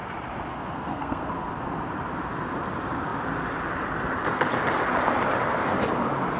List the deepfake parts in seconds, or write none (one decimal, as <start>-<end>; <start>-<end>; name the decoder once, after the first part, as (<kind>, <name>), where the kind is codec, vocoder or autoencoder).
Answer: 0.5-1.5 (codec, SNAC)